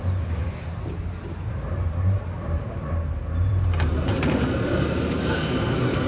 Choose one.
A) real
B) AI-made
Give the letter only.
B